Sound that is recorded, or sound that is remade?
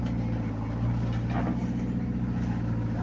recorded